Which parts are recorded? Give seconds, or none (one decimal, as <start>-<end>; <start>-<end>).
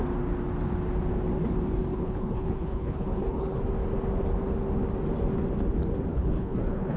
0.0-1.9; 3.6-6.1